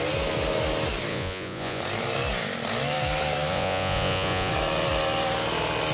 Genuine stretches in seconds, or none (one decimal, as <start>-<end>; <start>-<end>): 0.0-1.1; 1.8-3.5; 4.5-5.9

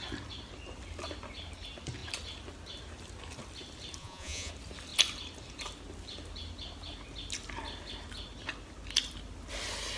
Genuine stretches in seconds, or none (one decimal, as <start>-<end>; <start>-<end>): 0.0-4.0; 4.5-10.0

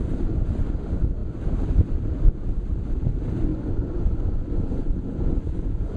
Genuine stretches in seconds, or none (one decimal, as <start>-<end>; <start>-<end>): 0.0-3.5